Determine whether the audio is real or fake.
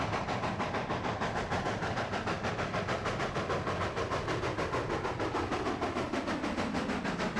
real